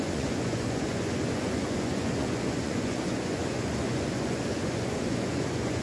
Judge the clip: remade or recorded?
remade